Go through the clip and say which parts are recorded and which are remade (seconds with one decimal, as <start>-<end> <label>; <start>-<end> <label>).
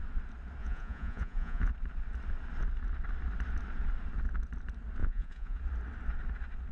0.0-0.6 recorded; 0.6-1.7 remade; 1.7-5.0 recorded; 5.0-5.6 remade; 5.6-6.7 recorded